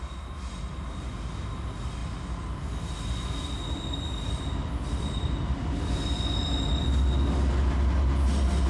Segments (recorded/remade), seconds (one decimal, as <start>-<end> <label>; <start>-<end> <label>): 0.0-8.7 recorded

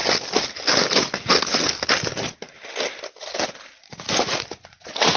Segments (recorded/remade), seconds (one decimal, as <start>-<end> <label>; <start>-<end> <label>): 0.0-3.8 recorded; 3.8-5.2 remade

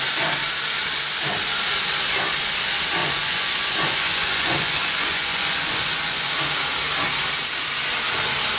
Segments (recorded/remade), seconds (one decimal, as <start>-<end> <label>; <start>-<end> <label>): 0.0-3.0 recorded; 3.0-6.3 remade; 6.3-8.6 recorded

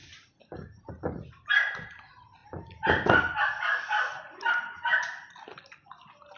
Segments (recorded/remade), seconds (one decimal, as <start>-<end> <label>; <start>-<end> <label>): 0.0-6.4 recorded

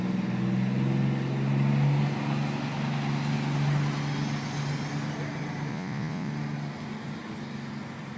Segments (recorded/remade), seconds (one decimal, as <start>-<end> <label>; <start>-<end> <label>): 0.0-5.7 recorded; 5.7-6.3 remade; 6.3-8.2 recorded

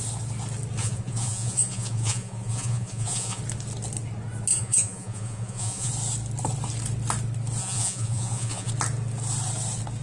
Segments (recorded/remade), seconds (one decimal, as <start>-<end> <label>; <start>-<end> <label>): 0.0-0.8 recorded; 0.8-3.4 remade; 3.4-4.5 recorded; 4.5-5.9 remade; 5.9-7.6 recorded; 7.6-8.7 remade; 8.7-10.0 recorded

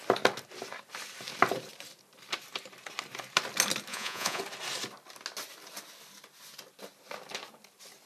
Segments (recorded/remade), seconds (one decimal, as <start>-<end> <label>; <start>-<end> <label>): 0.0-3.9 recorded; 3.9-4.4 remade; 4.4-8.1 recorded